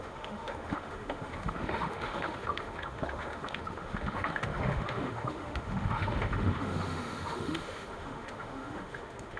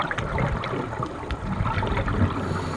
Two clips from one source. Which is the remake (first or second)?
first